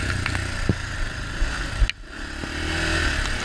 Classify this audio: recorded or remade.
recorded